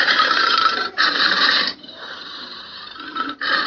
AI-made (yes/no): yes